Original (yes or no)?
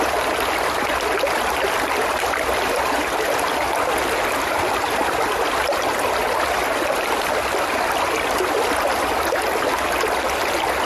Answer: yes